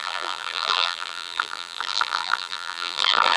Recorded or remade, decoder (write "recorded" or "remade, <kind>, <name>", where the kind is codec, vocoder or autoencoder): remade, vocoder, BigVGAN v2